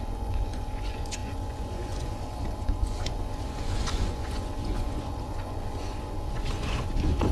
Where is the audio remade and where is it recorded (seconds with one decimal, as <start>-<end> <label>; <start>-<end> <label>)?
0.0-7.3 remade